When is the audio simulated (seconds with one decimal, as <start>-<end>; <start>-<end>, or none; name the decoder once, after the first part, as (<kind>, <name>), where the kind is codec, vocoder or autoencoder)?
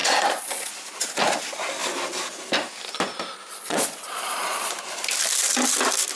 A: 0.0-0.7 (vocoder, Vocos); 3.5-4.7